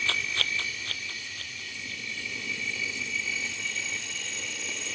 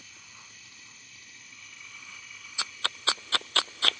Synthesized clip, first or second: second